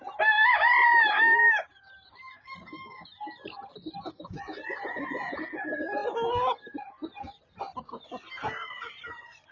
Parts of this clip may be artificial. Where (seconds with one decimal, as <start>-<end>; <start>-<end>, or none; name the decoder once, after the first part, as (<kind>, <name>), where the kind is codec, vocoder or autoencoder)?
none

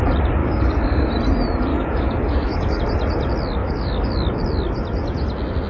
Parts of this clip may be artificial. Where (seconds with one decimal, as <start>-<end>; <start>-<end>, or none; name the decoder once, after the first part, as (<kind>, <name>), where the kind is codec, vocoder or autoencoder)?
0.4-1.1 (codec, DAC); 1.7-2.8; 3.6-4.1

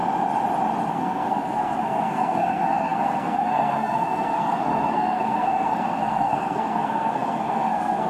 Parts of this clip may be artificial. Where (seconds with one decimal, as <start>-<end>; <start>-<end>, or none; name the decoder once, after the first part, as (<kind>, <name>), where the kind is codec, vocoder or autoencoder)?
0.9-8.1 (codec, SNAC)